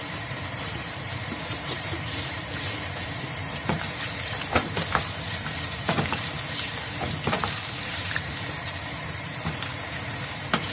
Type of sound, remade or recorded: remade